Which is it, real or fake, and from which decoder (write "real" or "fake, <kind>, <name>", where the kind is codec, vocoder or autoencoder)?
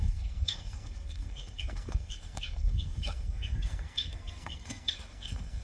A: fake, codec, SNAC